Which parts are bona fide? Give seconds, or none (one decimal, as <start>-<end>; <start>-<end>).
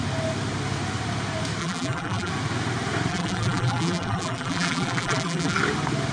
0.0-1.6; 2.3-3.1; 5.6-6.1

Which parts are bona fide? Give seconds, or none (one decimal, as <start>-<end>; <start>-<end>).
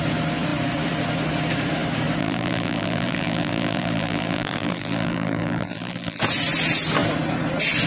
0.0-2.2; 6.2-7.9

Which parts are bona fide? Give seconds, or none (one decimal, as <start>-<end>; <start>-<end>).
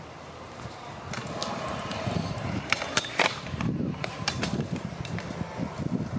0.0-1.4; 5.0-6.2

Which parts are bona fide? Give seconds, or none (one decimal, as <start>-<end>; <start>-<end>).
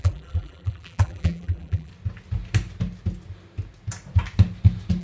1.9-5.0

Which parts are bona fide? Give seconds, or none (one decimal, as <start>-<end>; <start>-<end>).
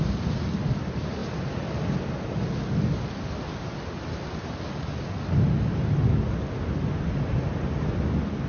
0.0-1.2; 2.4-8.5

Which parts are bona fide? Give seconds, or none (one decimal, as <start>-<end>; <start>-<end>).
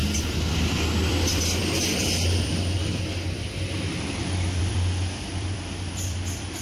none